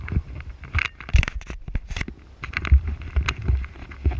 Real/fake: fake